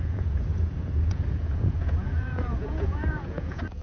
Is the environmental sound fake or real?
fake